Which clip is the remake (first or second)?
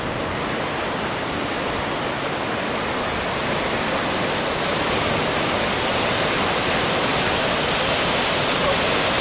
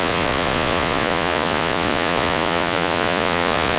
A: second